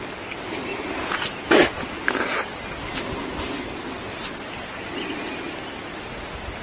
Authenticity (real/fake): real